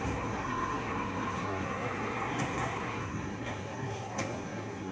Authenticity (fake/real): fake